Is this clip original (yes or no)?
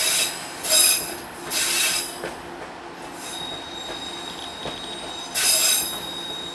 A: yes